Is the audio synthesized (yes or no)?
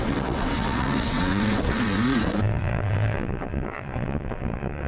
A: yes